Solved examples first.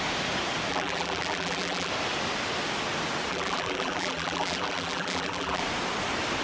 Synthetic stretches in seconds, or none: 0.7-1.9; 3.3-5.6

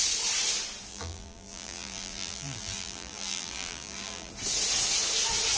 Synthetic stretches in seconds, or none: 0.9-4.3

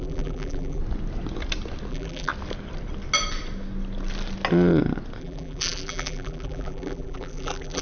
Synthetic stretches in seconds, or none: 0.0-0.8; 1.9-2.3; 5.2-7.8

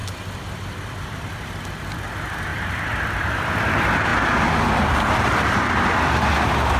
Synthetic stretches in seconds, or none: 2.5-3.6

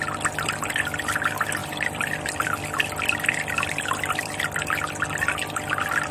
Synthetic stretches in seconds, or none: 1.6-5.0